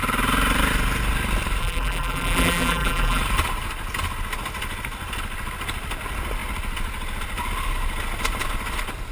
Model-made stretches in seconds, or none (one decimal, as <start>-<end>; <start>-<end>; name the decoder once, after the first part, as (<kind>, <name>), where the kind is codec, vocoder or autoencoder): 1.6-3.2 (vocoder, BigVGAN v2)